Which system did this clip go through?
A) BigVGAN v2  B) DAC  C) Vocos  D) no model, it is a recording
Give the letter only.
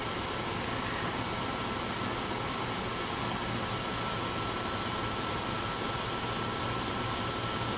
D